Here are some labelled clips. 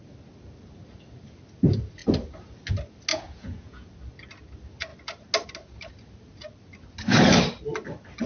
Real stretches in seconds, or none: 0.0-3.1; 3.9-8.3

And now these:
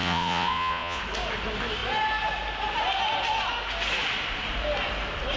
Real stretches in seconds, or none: 1.0-5.4

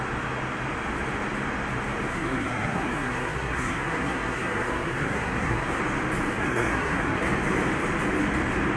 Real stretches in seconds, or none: 0.0-2.1; 5.8-6.3; 7.2-8.8

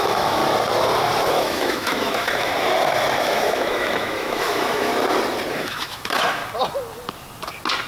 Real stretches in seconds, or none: 0.4-1.3; 2.5-3.2; 4.9-5.5; 6.4-7.9

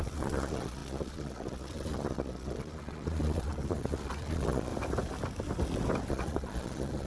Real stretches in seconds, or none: 4.7-6.1

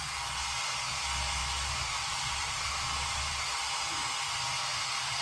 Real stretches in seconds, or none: 0.0-1.4; 3.6-5.2